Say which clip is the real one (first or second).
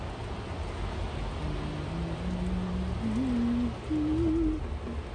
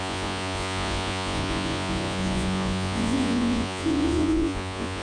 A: first